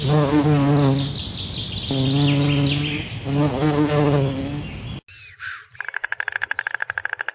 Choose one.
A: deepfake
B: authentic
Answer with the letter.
B